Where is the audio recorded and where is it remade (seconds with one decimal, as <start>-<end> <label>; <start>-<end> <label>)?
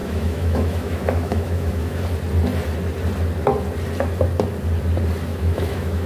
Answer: 0.0-2.0 remade; 2.0-5.3 recorded; 5.3-6.1 remade